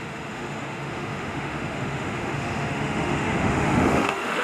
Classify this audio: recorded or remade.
remade